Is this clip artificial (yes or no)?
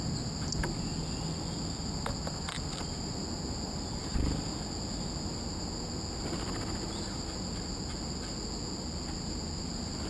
no